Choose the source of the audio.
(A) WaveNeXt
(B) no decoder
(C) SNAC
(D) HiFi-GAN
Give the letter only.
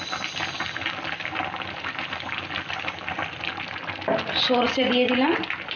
B